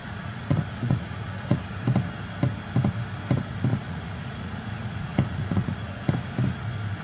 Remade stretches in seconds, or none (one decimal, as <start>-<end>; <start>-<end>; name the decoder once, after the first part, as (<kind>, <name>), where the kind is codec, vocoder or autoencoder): 0.0-1.6 (vocoder, Vocos); 3.7-6.1

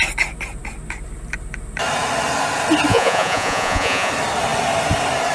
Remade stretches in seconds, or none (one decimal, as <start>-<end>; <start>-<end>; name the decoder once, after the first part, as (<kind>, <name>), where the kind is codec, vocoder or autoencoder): 2.9-4.1 (vocoder, Vocos)

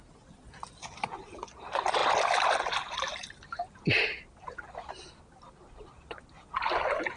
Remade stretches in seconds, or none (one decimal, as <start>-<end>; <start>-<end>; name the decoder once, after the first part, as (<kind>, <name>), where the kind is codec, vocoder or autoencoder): none

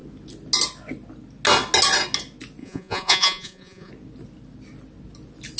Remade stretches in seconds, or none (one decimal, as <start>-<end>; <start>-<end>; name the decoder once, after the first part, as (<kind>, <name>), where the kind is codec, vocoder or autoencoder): 2.6-3.9 (vocoder, Vocos)

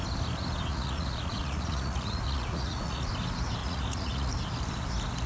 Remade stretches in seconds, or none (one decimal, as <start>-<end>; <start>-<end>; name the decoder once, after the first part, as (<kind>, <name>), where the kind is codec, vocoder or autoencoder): 0.7-3.1 (vocoder, Vocos); 3.6-4.3

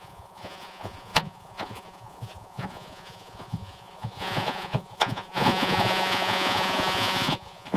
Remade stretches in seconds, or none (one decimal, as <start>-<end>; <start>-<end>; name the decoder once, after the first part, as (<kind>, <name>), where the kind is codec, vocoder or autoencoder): 0.0-7.8 (vocoder, Vocos)

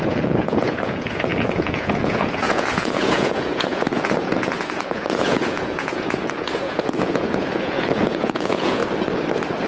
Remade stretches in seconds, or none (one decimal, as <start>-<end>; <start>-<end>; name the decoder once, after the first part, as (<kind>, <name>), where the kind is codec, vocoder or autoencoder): 0.0-8.8 (vocoder, Vocos)